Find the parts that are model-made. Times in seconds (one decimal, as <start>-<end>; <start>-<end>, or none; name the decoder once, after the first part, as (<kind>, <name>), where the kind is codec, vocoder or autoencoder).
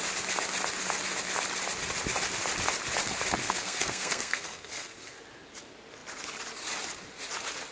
3.4-5.2 (codec, SNAC)